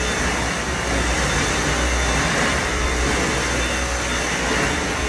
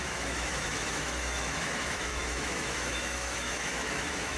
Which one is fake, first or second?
second